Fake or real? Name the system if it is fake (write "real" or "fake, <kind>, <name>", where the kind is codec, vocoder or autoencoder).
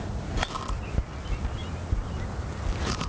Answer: real